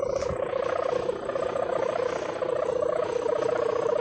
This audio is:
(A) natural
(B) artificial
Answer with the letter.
A